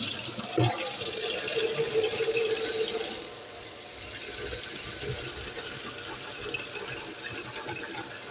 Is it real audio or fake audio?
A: real